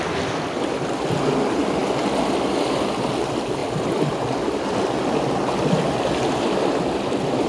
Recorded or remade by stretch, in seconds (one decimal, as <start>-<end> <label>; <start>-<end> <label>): 0.0-7.5 recorded